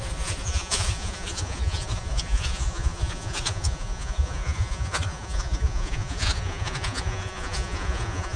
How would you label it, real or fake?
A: fake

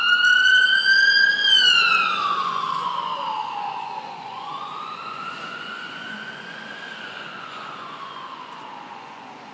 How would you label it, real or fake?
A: fake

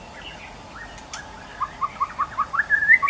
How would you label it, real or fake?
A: real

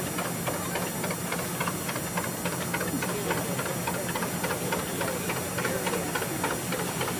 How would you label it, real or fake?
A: real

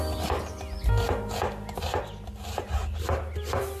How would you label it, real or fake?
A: real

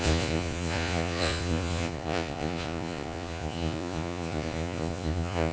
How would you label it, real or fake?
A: fake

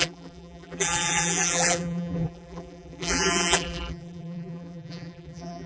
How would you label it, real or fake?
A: fake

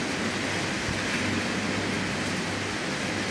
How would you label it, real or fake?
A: real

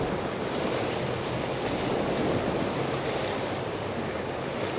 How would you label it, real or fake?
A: real